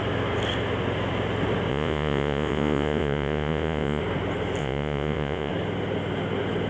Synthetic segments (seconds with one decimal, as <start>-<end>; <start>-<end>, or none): 1.7-4.0; 4.6-5.5